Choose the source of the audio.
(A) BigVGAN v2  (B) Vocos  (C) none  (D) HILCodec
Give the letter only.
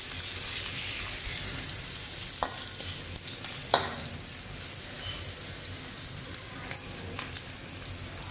C